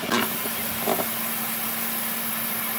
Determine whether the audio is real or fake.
real